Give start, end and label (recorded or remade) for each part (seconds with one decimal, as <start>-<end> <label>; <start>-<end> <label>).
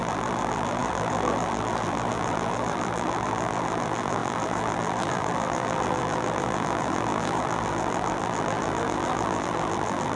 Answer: 0.0-10.2 remade